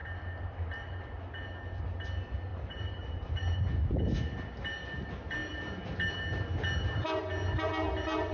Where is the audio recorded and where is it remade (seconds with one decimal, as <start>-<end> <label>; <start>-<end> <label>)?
0.0-1.1 remade; 1.1-2.5 recorded; 2.5-3.6 remade; 3.6-8.3 recorded